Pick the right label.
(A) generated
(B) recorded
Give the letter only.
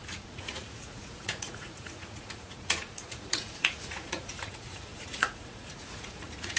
A